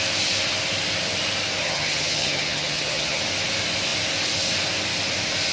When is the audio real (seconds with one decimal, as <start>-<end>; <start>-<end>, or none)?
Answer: 0.0-1.6; 3.2-5.5